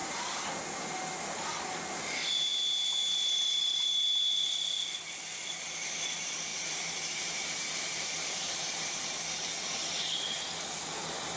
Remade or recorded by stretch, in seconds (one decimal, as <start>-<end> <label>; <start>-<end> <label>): 0.0-0.6 remade; 0.6-5.3 recorded; 5.3-5.9 remade; 5.9-6.5 recorded; 6.5-9.5 remade; 9.5-11.4 recorded